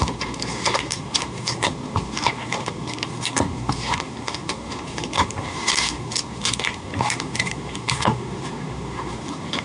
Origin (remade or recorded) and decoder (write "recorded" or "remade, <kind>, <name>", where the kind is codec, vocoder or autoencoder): remade, codec, SNAC